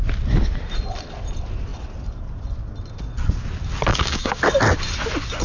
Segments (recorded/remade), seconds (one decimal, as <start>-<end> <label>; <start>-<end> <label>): 0.0-3.9 recorded; 3.9-4.4 remade; 4.4-5.4 recorded